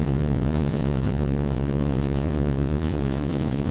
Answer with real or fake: fake